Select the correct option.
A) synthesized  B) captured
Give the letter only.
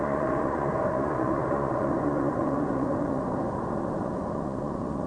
A